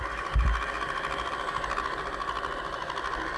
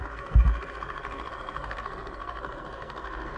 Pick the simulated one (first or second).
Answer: second